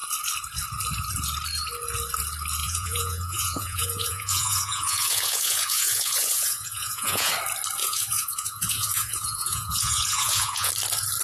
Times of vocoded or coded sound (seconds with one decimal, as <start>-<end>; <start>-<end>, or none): 2.6-7.3; 7.8-10.7